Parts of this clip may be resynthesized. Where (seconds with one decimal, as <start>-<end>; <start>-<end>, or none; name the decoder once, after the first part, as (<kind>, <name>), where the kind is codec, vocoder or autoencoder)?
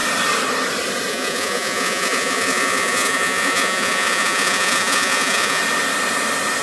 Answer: 1.1-5.6 (vocoder, Vocos)